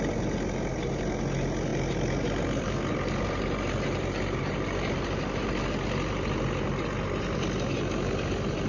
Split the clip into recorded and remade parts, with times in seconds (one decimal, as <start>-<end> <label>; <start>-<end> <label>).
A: 0.0-8.7 recorded